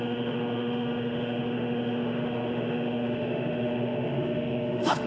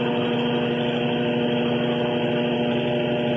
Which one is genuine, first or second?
second